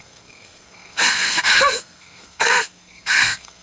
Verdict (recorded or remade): remade